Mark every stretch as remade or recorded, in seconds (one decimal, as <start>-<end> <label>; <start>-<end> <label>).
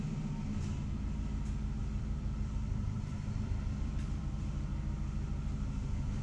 0.0-1.8 recorded; 1.8-4.9 remade; 4.9-6.2 recorded